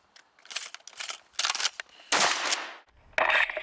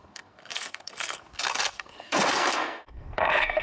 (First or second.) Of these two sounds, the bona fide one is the first